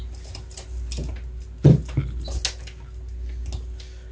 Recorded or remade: recorded